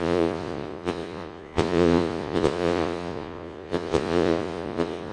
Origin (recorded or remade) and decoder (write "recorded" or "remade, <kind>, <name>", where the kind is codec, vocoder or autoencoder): remade, vocoder, Vocos